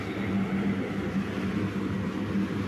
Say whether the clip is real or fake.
real